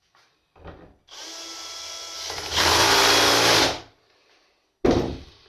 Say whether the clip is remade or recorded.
recorded